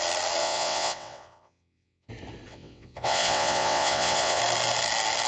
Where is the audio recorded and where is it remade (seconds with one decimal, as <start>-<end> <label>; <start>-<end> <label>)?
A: 0.0-0.4 recorded; 0.4-2.1 remade; 2.1-2.5 recorded; 2.5-4.4 remade; 4.4-5.3 recorded